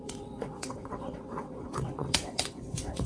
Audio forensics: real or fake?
fake